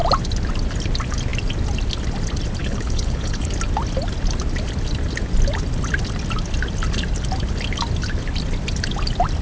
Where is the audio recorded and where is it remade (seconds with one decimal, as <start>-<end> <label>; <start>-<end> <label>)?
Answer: 0.0-2.6 recorded; 2.6-3.5 remade; 3.5-9.4 recorded